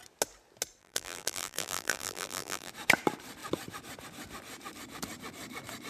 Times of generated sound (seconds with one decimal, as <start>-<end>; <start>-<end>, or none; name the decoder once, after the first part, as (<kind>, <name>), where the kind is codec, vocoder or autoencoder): 0.8-2.7 (vocoder, BigVGAN v2)